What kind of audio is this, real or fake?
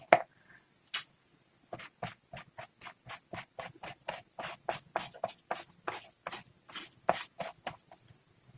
real